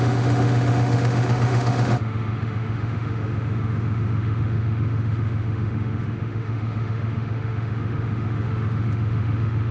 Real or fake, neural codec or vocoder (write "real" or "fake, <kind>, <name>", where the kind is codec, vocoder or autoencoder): fake, autoencoder, DAC-VAE